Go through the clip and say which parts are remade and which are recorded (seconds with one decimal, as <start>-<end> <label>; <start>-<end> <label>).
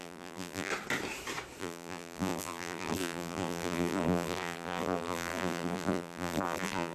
0.0-0.7 remade; 0.7-1.6 recorded; 1.6-6.9 remade